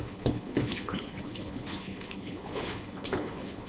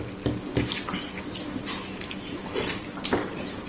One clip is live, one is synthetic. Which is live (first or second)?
second